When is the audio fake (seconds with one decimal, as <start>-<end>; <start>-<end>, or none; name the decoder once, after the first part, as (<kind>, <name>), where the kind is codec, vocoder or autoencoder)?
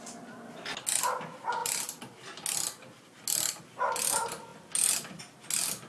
none